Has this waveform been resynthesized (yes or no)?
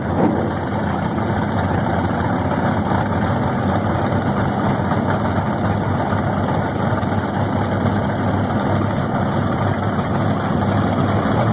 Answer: no